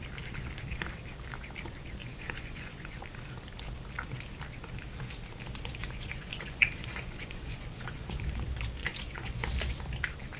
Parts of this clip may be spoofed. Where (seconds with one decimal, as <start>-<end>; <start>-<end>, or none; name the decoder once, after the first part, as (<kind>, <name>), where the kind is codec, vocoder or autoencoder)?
2.0-3.0 (vocoder, Vocos); 5.8-8.4; 8.8-9.4